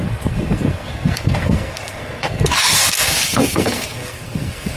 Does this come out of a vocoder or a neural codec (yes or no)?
yes